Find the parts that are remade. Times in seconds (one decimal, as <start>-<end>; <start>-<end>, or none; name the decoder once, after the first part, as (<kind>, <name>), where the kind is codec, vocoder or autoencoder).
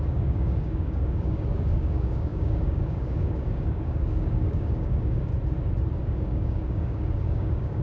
0.0-5.3 (codec, DAC); 6.0-7.8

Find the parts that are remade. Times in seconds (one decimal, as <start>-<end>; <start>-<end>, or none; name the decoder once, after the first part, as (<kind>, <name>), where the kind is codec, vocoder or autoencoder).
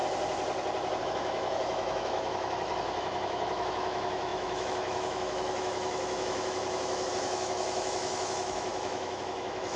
1.0-9.8 (autoencoder, DAC-VAE)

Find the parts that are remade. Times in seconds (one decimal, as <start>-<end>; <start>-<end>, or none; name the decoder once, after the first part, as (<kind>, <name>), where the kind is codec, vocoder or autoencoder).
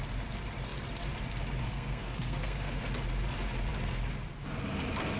1.6-2.8 (codec, SNAC)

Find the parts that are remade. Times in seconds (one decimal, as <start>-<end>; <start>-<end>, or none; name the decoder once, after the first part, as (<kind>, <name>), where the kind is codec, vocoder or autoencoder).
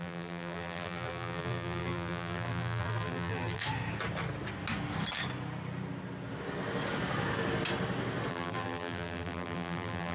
0.0-3.6 (vocoder, BigVGAN v2); 8.3-10.1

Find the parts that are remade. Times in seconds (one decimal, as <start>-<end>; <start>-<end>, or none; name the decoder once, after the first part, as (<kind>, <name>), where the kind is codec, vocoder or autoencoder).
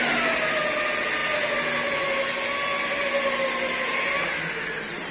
none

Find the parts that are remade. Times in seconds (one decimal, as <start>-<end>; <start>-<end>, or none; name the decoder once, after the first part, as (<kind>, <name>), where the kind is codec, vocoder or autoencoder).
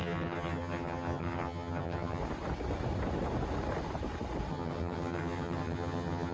0.0-2.2 (vocoder, HiFi-GAN); 4.5-6.3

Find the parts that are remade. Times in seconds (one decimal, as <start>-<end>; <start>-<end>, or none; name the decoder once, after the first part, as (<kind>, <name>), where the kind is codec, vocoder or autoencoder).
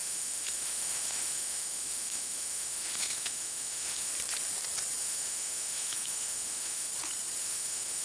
0.0-4.1 (autoencoder, DAC-VAE); 5.0-6.9; 7.4-8.0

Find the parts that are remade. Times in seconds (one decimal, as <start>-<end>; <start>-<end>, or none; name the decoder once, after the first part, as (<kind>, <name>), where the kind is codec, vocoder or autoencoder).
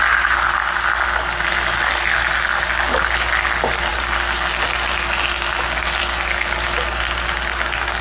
none